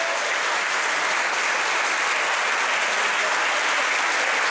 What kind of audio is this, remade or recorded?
recorded